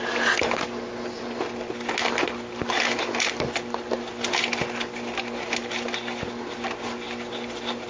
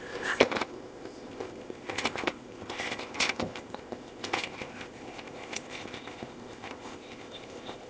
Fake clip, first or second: second